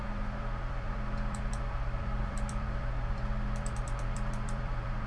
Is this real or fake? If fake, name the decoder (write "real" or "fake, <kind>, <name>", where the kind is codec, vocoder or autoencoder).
fake, vocoder, BigVGAN v2